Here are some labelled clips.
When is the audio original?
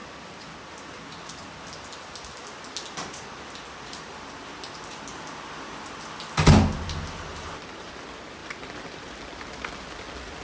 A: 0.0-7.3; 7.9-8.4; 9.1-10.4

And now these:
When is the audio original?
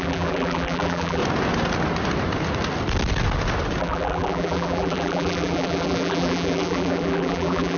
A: 1.2-3.8